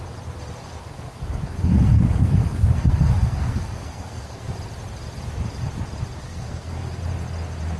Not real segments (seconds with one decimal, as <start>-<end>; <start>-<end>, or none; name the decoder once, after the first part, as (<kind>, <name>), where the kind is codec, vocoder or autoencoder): 0.8-4.5 (codec, SNAC); 6.2-7.0